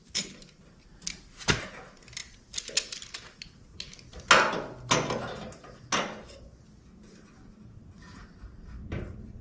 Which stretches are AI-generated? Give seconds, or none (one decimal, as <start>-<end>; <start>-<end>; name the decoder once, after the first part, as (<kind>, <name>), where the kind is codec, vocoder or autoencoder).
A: none